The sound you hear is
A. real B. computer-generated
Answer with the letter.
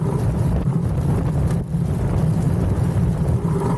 A